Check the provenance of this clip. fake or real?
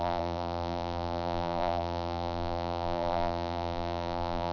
fake